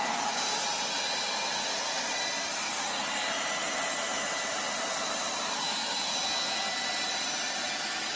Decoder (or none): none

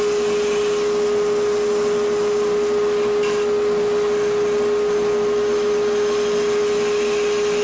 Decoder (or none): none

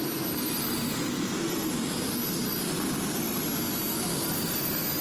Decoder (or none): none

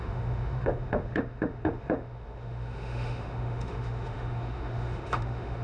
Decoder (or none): autoencoder, DAC-VAE